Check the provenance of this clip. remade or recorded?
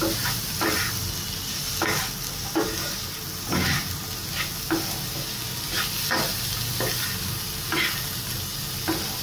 recorded